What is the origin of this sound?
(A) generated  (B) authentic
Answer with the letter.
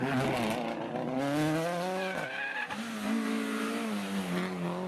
B